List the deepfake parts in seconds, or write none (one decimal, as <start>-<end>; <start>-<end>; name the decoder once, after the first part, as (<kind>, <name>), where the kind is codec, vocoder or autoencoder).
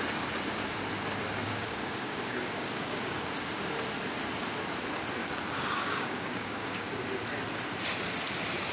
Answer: 1.4-3.3 (codec, DAC); 5.2-6.9